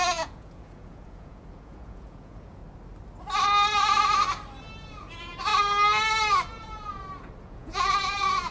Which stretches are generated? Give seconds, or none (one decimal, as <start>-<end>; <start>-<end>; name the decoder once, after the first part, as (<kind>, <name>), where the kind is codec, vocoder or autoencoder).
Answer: 0.0-2.6 (vocoder, Vocos); 4.9-5.5; 6.5-6.9; 7.4-8.5